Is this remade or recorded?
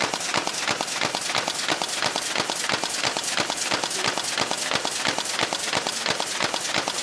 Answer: recorded